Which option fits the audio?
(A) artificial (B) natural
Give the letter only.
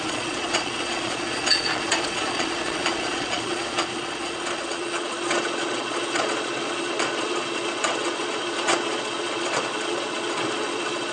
A